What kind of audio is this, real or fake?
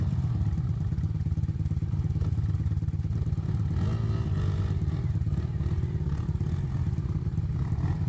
real